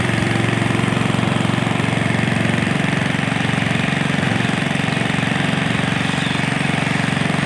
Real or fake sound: fake